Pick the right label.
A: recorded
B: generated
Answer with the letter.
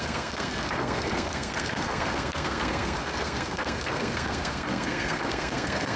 B